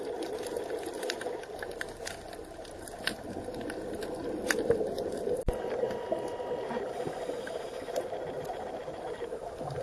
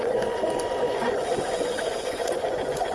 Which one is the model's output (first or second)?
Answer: second